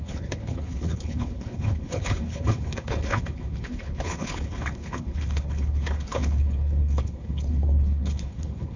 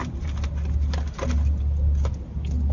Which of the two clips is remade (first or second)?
first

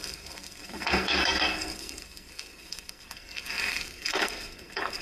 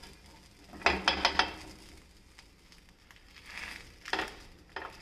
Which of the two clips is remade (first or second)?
first